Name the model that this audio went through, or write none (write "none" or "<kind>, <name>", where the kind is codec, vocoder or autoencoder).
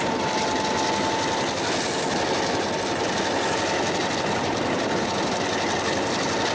none